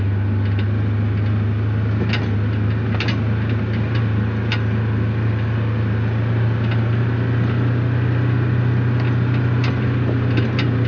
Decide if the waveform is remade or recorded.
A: recorded